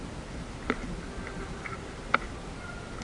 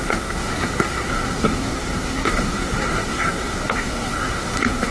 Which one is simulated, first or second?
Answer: second